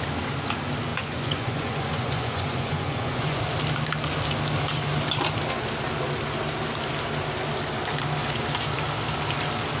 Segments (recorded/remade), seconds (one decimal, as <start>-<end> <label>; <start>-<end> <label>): 0.0-0.9 recorded; 0.9-3.4 remade; 3.4-9.8 recorded